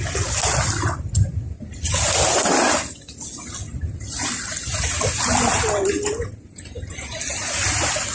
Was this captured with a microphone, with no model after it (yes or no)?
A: yes